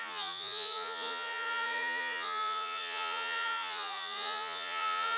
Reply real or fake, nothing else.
fake